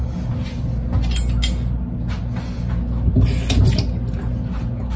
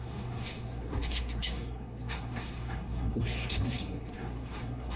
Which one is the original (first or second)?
first